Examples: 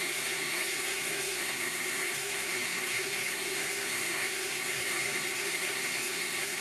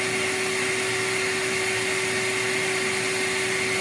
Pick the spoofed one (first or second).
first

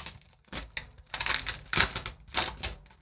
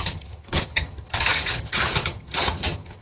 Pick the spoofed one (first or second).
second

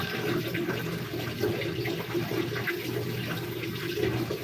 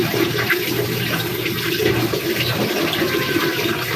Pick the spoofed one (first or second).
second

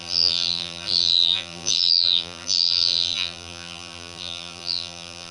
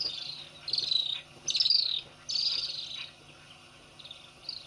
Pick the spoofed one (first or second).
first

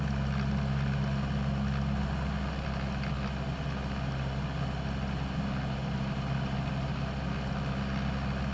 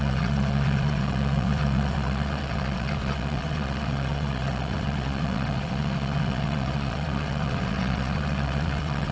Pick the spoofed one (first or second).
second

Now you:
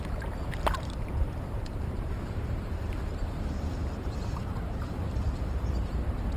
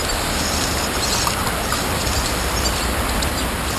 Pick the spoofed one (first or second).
first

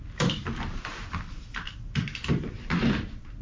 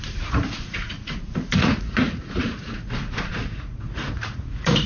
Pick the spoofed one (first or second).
second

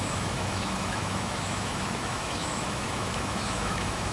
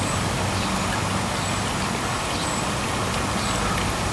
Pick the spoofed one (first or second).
first